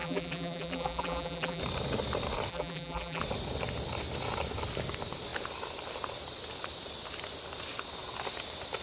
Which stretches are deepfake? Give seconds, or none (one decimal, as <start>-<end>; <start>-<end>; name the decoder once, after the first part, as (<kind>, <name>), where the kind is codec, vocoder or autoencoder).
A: 0.0-1.6 (vocoder, BigVGAN v2); 2.5-3.2